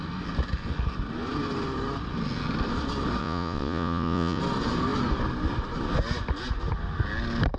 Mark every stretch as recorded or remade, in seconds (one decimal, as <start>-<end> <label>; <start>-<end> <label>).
0.0-3.2 recorded; 3.2-4.4 remade; 4.4-7.6 recorded